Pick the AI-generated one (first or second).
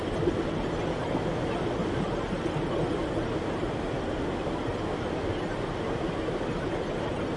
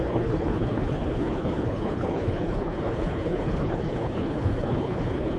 second